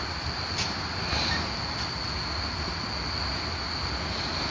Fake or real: real